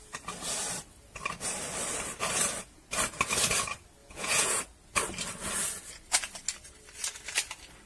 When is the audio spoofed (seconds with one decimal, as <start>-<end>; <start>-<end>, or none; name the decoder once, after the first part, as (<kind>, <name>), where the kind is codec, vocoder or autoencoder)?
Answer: 4.0-4.6 (vocoder, Vocos)